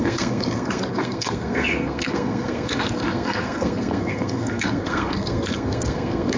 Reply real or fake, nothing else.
fake